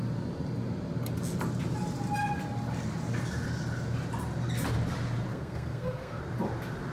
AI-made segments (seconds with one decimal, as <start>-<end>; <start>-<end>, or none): 5.3-6.2

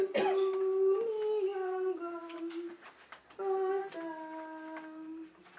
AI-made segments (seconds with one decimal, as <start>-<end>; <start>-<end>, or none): none

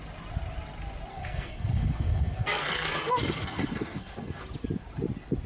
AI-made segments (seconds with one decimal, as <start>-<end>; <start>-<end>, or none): 1.1-4.4

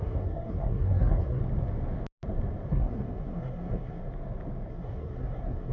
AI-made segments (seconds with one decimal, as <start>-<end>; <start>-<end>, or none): 0.0-1.4; 2.7-4.0; 4.7-5.7

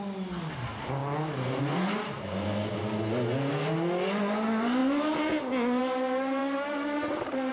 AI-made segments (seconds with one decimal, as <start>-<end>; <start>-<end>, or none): none

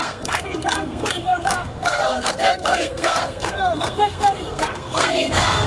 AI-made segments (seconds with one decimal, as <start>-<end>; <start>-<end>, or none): 0.0-5.7

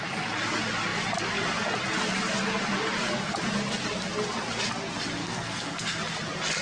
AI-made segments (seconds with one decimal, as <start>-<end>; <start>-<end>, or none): 5.2-6.0

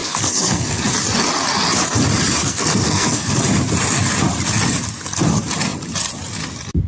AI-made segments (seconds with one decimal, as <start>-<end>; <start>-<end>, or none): 0.0-0.8; 2.4-3.4